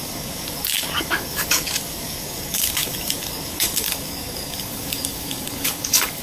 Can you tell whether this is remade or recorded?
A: remade